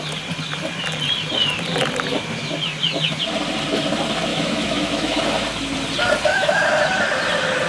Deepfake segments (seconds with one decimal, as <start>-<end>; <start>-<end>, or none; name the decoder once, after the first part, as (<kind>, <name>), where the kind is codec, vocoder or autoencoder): 4.3-5.2 (autoencoder, DAC-VAE); 6.3-6.8